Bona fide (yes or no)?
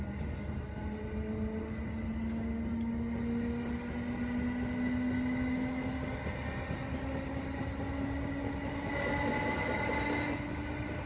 yes